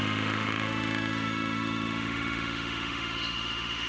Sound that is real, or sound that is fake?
fake